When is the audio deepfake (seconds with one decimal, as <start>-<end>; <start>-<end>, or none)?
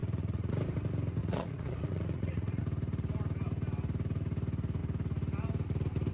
0.0-0.5; 1.2-2.6